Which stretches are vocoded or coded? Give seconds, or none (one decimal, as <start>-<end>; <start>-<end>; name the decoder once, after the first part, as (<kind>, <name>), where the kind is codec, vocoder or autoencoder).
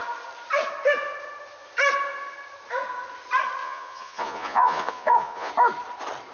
3.6-5.5 (vocoder, Vocos)